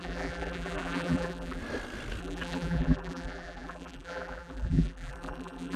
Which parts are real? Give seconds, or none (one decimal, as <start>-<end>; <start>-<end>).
1.6-2.2